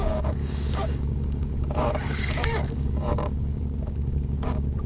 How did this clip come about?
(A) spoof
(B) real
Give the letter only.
A